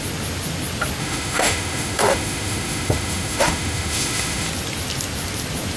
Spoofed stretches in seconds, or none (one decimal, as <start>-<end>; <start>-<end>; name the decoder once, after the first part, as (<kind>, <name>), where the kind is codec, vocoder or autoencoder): 1.0-4.5 (autoencoder, DAC-VAE)